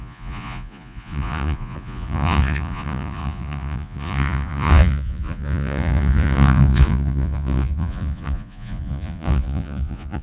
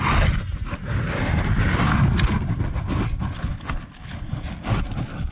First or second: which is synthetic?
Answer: first